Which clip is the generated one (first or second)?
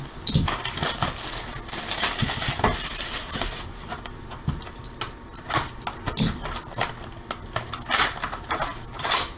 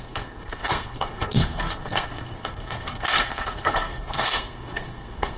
second